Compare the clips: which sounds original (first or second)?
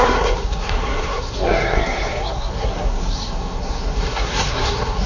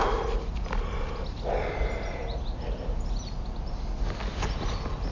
second